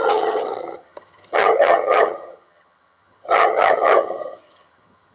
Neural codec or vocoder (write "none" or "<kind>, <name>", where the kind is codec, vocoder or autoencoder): vocoder, HiFi-GAN